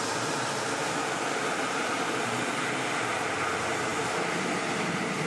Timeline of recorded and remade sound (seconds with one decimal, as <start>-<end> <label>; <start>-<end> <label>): 0.0-5.3 recorded